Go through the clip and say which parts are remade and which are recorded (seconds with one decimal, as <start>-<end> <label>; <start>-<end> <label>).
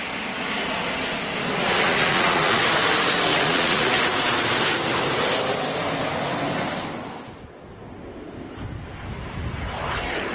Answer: 0.0-1.6 recorded; 1.6-2.6 remade; 2.6-3.3 recorded; 3.3-4.0 remade; 4.0-10.3 recorded